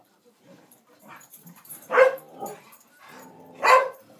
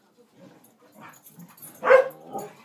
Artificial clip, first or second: first